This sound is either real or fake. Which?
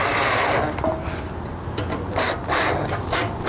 real